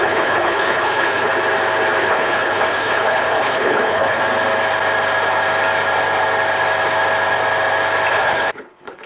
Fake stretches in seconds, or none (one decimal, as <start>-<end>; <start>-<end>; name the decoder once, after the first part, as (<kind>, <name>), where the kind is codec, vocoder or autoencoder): 0.0-1.3 (codec, HILCodec); 2.0-4.2; 8.1-9.1